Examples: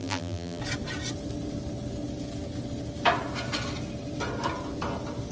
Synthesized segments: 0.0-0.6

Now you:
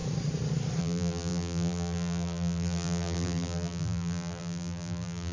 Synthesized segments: 0.8-5.3